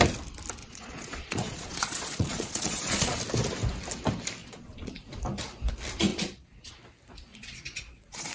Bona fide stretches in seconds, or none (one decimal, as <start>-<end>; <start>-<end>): 0.0-0.6; 3.2-4.4; 5.2-6.1; 6.7-7.3